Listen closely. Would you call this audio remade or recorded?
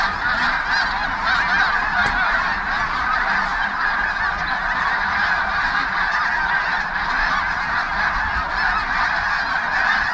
recorded